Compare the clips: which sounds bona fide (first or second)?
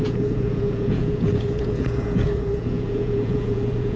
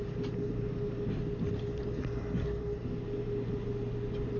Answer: second